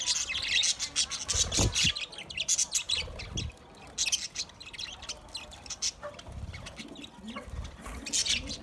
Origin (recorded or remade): recorded